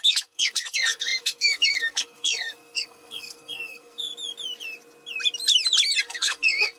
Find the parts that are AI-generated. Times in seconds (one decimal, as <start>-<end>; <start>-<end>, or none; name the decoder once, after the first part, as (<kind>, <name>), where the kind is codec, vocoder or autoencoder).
0.0-4.1 (codec, SNAC); 6.0-6.8